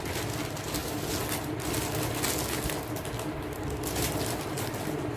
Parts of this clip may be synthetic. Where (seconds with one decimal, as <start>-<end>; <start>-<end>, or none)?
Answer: none